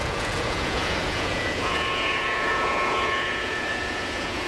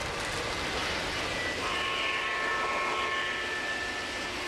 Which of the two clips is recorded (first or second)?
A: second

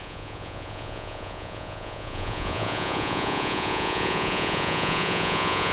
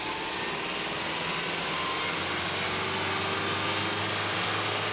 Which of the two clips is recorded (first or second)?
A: second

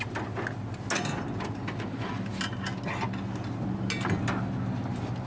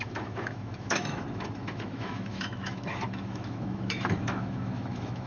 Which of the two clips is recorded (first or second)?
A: first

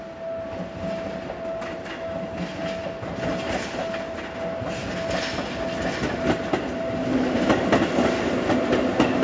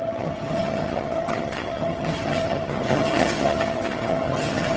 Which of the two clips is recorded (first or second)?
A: first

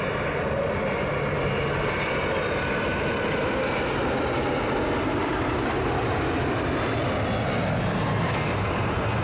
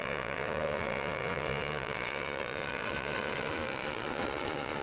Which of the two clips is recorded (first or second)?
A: first